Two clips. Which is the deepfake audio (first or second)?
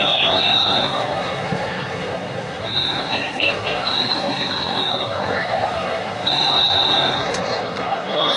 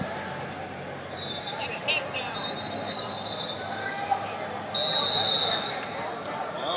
first